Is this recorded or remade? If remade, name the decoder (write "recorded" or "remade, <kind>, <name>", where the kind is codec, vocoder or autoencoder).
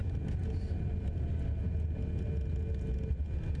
recorded